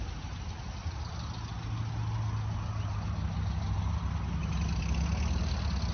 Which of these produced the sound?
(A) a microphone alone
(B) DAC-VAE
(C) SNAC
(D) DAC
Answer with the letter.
A